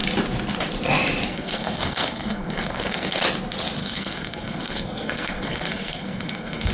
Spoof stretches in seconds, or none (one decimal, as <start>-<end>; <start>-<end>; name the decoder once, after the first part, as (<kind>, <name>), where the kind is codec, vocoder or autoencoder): 1.3-3.2 (codec, SNAC); 3.8-6.7